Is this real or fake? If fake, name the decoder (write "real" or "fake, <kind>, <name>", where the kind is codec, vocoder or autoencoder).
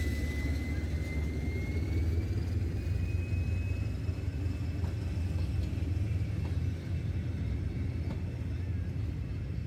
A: real